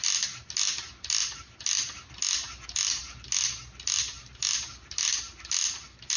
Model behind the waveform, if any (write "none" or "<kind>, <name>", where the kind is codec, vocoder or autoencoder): none